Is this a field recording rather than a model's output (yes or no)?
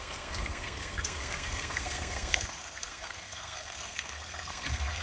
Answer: no